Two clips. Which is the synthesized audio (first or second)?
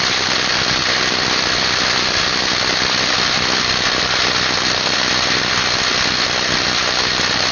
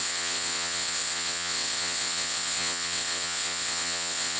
second